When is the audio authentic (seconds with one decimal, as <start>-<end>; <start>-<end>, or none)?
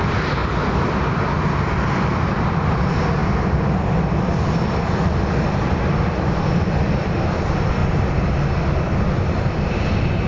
3.2-5.8; 7.8-8.5